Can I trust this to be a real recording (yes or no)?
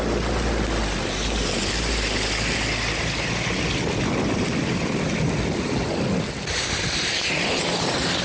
yes